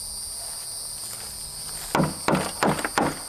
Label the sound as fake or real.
real